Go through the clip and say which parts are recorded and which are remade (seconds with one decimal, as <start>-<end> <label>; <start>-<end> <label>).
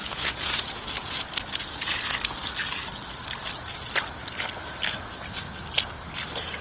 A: 0.0-2.0 remade; 2.0-6.6 recorded